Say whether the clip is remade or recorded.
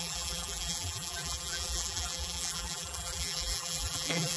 remade